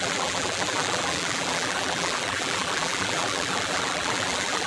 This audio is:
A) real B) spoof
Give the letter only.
B